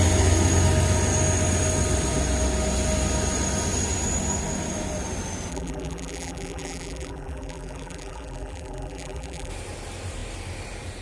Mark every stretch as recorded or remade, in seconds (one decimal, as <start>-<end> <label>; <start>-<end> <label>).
0.0-5.5 recorded; 5.5-9.5 remade; 9.5-11.0 recorded